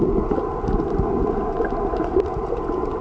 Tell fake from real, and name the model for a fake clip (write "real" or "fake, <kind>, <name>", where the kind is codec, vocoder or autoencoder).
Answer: real